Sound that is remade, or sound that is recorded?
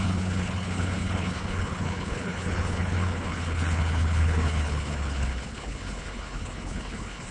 remade